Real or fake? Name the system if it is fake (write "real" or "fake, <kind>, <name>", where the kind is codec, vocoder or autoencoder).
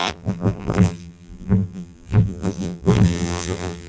fake, vocoder, BigVGAN v2